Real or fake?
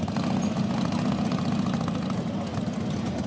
real